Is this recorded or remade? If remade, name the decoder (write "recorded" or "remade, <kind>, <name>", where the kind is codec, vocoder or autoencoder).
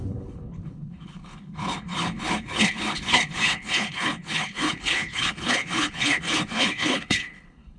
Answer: remade, codec, HILCodec